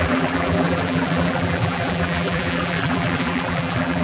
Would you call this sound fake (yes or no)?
yes